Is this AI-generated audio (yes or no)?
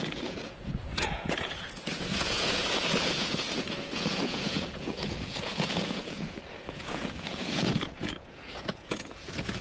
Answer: yes